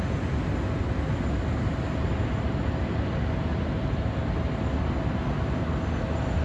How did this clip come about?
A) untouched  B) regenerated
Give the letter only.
A